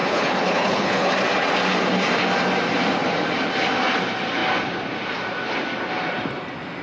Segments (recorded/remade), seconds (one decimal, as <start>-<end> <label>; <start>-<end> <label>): 0.0-1.1 remade; 1.1-6.8 recorded